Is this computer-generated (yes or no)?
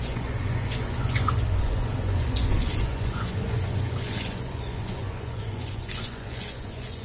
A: yes